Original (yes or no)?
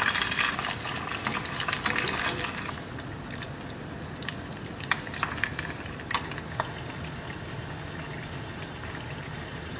yes